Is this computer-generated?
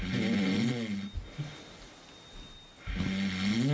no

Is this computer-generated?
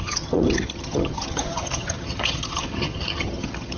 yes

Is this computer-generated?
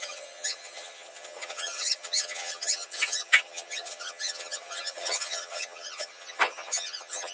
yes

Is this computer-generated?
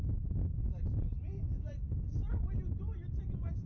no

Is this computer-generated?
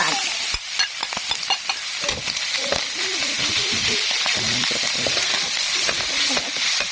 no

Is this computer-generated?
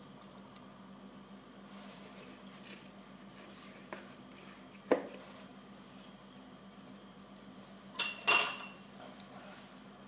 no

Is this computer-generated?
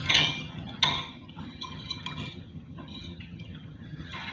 yes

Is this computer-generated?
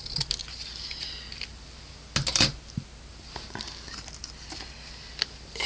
no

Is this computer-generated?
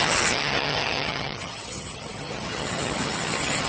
yes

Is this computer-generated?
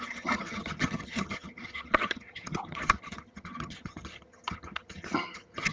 yes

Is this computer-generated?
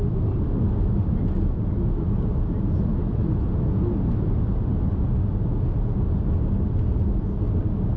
no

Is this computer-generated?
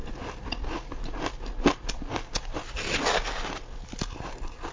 no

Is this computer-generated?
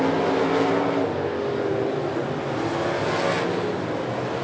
no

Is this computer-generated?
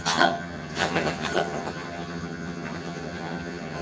yes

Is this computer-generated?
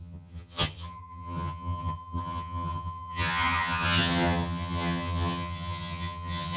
yes